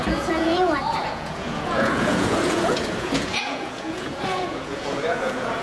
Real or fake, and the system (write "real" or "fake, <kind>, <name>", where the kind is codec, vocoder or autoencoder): fake, vocoder, Vocos